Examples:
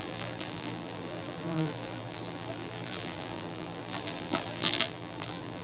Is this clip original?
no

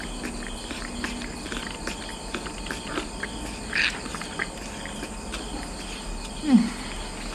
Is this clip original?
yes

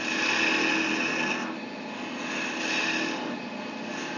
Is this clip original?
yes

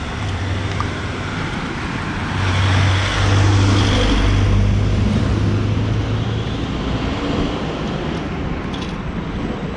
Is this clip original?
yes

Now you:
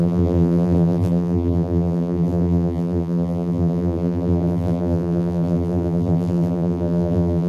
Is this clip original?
no